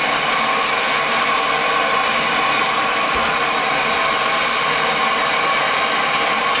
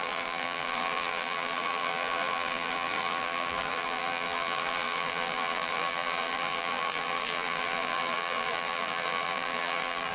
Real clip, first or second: first